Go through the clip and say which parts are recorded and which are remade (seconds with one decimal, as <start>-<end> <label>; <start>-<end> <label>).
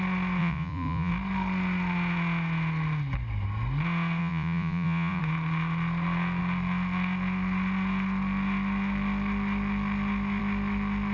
0.0-0.4 recorded; 0.4-1.1 remade; 1.1-4.2 recorded; 4.2-5.2 remade; 5.2-11.1 recorded